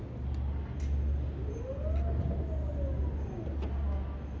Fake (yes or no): no